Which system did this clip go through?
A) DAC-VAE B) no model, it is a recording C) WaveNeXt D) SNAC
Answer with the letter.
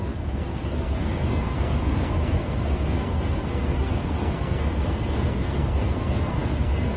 D